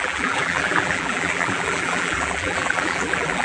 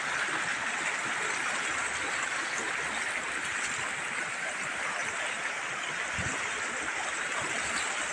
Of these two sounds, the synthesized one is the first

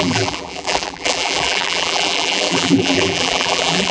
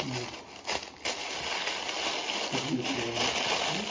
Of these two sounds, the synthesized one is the first